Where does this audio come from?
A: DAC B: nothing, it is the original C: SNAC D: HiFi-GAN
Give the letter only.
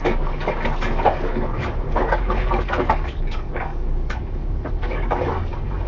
A